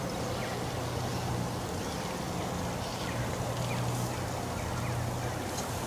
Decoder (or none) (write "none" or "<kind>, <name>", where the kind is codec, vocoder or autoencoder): none